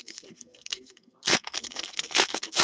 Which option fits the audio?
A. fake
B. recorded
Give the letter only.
A